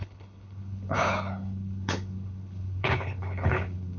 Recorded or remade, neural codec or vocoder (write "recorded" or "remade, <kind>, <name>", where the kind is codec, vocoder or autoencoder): remade, codec, HILCodec